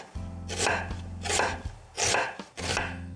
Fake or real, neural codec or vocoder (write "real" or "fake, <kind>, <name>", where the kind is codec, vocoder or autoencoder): real